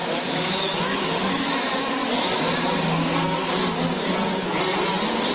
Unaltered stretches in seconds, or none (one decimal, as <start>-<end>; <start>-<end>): 1.5-5.3

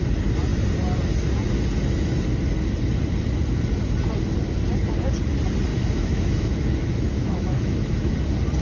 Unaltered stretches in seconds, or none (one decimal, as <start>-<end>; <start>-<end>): 0.0-5.7; 8.1-8.6

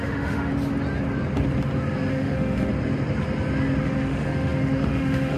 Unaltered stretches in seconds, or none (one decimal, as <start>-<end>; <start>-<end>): 0.5-2.1; 2.7-3.8

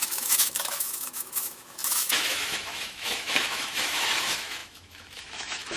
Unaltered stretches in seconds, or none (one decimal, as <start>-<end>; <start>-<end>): none

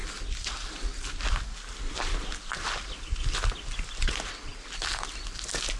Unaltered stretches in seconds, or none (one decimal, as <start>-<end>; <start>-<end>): 0.0-5.8

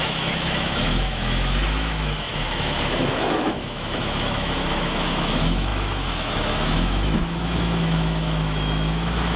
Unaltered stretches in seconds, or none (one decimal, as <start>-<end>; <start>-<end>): none